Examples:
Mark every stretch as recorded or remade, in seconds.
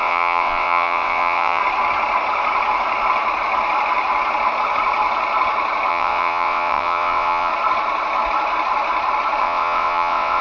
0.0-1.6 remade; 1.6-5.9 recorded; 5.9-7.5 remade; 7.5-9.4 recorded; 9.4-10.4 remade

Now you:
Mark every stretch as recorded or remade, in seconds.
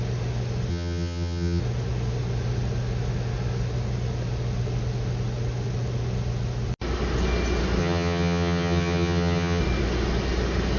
0.0-0.7 recorded; 0.7-1.6 remade; 1.6-7.8 recorded; 7.8-9.6 remade; 9.6-10.8 recorded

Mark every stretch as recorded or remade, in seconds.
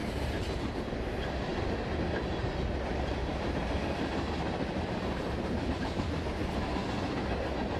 0.0-0.8 remade; 0.8-1.5 recorded; 1.5-2.2 remade; 2.2-3.2 recorded; 3.2-6.2 remade; 6.2-7.8 recorded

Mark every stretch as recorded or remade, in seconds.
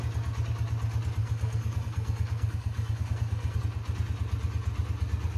0.0-1.2 recorded; 1.2-3.6 remade; 3.6-5.4 recorded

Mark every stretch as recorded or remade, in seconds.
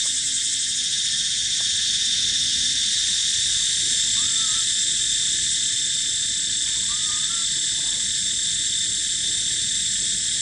0.0-10.4 recorded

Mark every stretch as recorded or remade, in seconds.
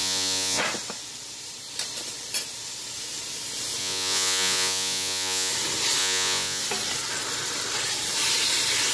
0.0-0.6 remade; 0.6-3.8 recorded; 3.8-5.5 remade; 5.5-6.0 recorded; 6.0-6.6 remade; 6.6-8.9 recorded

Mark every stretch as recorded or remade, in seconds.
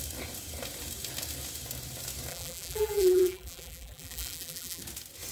0.0-2.3 recorded; 2.3-4.8 remade; 4.8-5.3 recorded